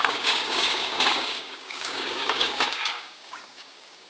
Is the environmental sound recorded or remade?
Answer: remade